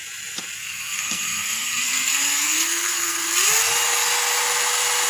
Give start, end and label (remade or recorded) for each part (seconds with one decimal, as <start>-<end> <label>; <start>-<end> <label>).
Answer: 0.0-0.6 recorded; 0.6-3.2 remade; 3.2-5.1 recorded